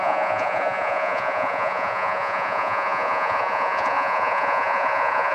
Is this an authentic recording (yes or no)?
no